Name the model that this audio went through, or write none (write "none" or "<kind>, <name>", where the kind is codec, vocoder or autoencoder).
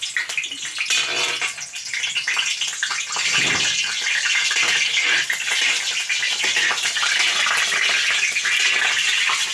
none